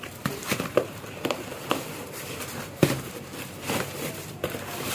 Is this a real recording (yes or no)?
no